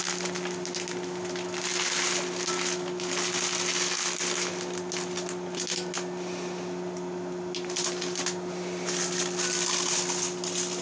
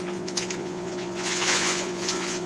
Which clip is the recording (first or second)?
first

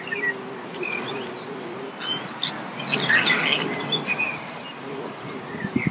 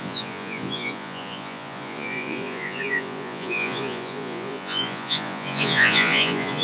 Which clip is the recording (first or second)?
first